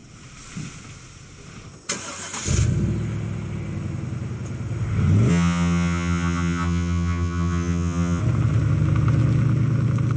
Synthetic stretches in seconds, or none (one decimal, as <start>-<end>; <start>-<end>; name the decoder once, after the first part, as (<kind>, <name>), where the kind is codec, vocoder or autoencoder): 5.3-8.2 (vocoder, HiFi-GAN)